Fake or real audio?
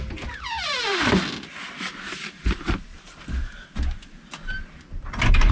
real